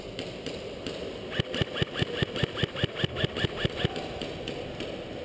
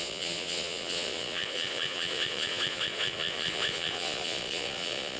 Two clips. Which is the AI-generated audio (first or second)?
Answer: second